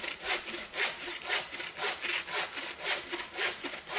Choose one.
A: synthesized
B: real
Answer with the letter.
B